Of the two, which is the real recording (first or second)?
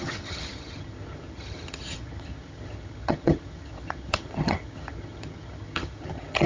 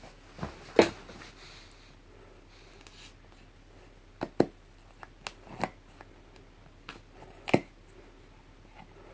second